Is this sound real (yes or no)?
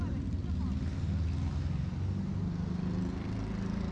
yes